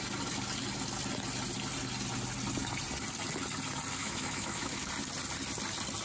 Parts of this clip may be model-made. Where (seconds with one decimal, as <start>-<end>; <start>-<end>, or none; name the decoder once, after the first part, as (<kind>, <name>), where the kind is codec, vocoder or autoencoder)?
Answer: 4.0-4.9 (autoencoder, DAC-VAE)